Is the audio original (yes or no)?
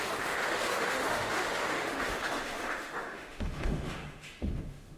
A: no